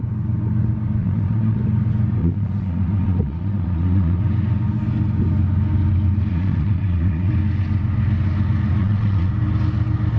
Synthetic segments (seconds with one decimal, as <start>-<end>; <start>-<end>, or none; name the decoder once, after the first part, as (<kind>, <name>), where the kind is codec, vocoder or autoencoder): 1.0-1.6 (vocoder, Vocos); 2.2-4.2; 6.3-7.3; 8.8-9.3